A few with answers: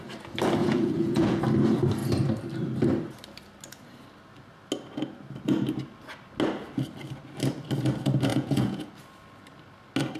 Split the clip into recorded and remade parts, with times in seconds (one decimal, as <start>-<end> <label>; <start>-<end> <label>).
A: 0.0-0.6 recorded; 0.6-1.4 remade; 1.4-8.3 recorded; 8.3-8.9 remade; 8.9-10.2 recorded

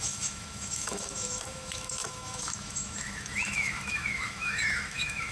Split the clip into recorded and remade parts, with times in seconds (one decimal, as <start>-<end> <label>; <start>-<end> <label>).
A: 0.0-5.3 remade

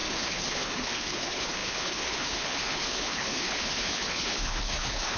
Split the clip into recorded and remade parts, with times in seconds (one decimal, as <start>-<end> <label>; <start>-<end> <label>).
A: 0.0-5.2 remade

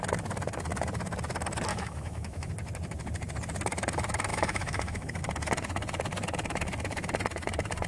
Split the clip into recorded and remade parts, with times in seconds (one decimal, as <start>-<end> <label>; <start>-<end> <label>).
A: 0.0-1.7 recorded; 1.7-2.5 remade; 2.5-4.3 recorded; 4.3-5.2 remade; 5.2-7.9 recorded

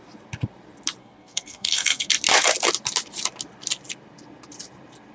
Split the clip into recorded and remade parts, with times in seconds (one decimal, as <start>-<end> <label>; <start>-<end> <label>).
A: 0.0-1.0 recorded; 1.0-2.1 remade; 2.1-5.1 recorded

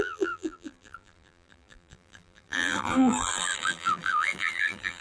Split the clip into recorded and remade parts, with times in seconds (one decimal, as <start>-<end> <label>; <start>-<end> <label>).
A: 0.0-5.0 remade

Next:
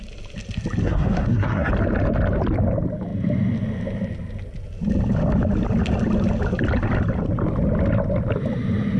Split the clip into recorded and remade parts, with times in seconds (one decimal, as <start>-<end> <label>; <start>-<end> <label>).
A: 0.0-0.8 recorded; 0.8-1.7 remade; 1.7-9.0 recorded